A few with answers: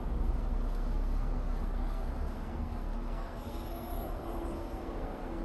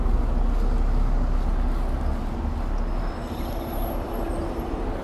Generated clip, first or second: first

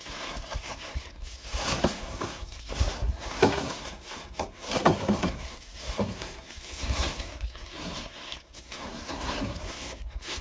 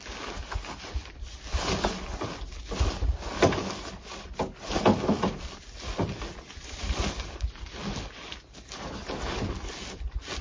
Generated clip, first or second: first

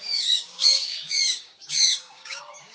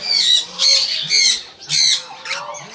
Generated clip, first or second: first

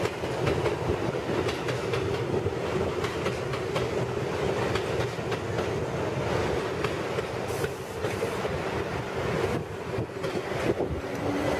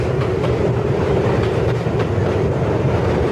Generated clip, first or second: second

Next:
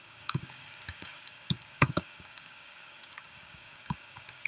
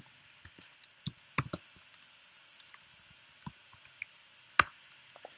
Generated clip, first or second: first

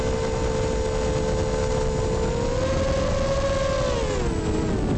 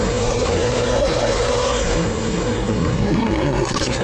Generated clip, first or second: second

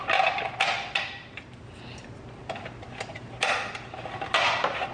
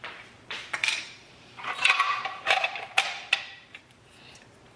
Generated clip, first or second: second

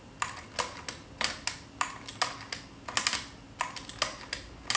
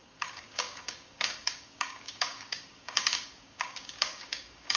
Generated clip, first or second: second